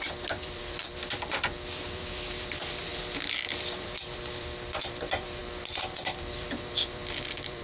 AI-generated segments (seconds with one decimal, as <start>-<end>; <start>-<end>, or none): 0.0-5.4; 6.0-7.6